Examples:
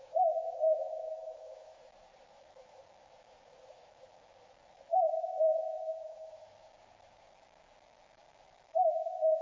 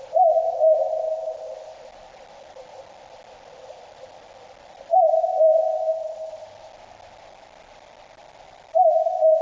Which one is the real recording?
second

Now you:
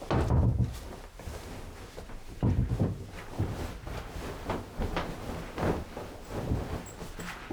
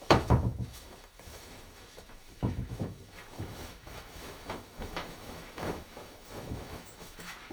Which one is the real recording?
first